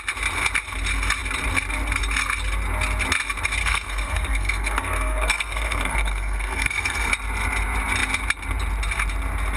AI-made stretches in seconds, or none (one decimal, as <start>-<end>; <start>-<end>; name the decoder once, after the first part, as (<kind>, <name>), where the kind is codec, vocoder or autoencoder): 3.6-7.1 (codec, SNAC)